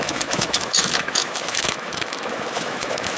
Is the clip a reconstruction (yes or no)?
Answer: yes